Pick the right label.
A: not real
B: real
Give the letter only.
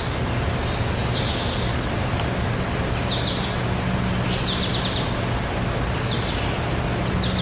B